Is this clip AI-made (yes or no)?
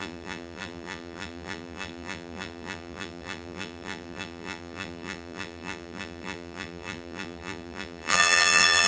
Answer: yes